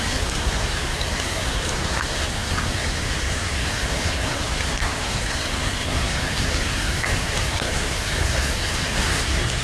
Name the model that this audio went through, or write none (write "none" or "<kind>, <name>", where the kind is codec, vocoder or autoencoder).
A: codec, SNAC